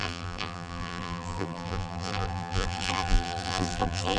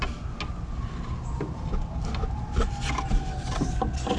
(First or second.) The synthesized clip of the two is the first